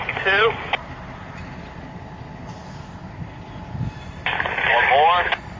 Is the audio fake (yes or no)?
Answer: no